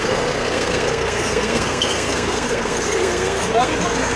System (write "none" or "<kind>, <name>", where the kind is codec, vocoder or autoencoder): codec, SNAC